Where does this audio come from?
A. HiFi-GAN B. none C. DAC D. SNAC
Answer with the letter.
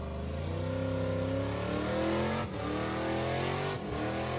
B